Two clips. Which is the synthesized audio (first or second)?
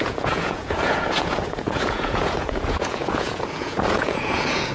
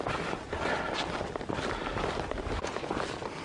first